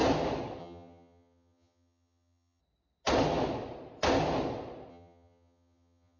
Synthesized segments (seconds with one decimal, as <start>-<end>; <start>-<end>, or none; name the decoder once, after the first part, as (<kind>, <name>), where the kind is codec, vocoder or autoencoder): 0.6-2.6 (vocoder, HiFi-GAN); 4.9-6.2